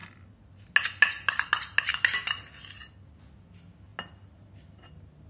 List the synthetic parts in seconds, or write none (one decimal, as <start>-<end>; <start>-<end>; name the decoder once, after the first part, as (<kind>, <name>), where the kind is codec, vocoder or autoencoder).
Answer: none

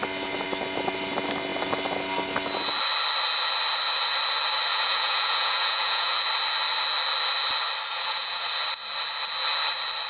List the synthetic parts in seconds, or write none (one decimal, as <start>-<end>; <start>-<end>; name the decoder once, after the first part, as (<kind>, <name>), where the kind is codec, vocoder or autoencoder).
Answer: 4.7-6.2 (vocoder, Vocos); 7.9-8.5

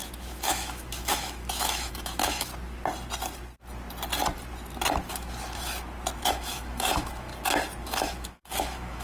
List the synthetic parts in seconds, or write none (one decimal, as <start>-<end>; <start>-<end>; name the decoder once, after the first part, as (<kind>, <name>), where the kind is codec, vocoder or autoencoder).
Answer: 0.0-2.5 (autoencoder, DAC-VAE); 6.3-7.3; 7.8-9.0

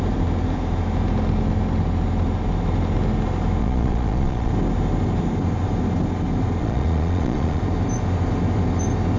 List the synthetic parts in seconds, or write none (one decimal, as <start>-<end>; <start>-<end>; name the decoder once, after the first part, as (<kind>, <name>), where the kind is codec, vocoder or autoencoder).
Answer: 3.6-4.5 (vocoder, Vocos); 6.6-7.6